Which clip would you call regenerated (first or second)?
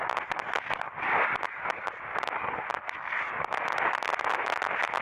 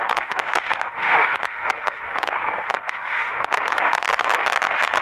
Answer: second